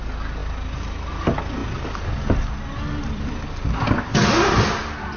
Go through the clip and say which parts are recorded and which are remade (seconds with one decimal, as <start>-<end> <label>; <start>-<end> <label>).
0.0-5.2 recorded